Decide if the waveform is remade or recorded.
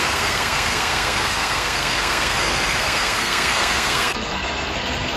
remade